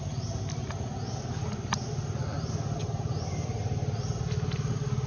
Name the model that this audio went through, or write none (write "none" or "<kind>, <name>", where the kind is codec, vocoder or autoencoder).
none